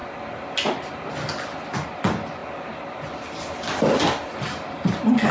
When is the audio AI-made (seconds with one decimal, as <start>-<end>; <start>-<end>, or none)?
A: none